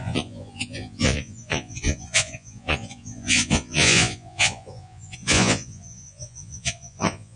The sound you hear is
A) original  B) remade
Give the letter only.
B